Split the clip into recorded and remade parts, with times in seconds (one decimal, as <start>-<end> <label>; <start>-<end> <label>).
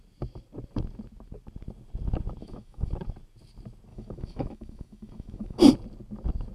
0.0-2.4 recorded; 2.4-2.9 remade; 2.9-3.9 recorded; 3.9-5.7 remade; 5.7-6.5 recorded